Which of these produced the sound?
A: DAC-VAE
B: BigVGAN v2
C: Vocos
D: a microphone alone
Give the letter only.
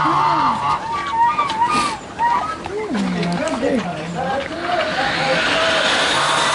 D